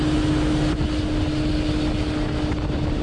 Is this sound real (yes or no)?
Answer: yes